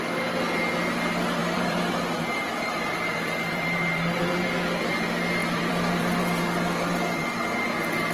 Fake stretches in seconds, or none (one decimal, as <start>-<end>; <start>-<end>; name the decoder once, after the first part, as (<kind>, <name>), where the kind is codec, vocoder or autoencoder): 1.4-4.3 (vocoder, BigVGAN v2); 5.4-6.4